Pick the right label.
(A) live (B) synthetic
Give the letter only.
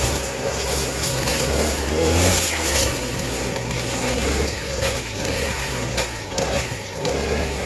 B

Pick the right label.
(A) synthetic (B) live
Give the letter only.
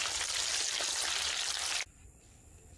B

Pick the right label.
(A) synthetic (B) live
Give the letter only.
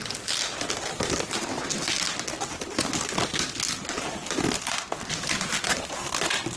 B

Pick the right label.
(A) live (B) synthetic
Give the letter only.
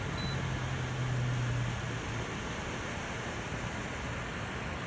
A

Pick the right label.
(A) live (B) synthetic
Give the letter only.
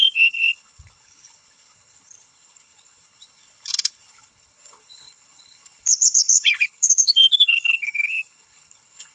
B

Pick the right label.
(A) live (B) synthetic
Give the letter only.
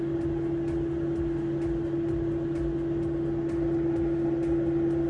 A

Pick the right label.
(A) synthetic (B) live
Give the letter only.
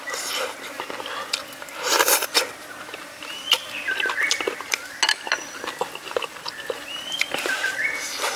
B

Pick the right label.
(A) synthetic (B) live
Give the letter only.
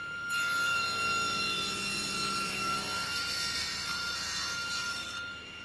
A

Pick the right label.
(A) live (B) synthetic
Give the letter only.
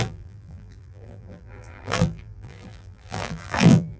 B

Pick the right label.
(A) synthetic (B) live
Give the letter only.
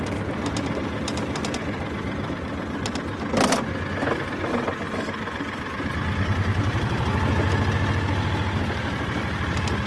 B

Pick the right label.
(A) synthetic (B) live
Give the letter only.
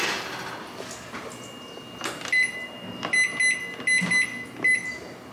B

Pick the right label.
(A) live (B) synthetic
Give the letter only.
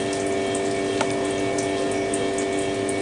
A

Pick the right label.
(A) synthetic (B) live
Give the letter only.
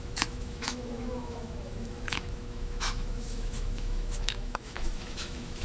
A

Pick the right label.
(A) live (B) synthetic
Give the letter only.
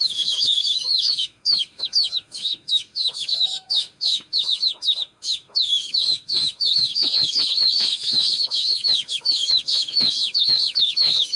B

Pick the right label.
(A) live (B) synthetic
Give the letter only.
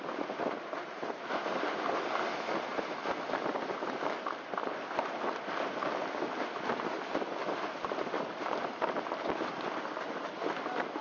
A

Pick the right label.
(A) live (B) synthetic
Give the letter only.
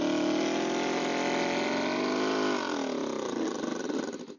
A